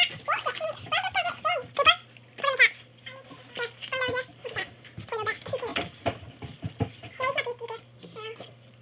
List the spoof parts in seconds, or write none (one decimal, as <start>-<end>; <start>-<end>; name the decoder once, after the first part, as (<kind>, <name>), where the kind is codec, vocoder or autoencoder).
none